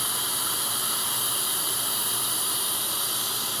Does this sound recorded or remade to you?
recorded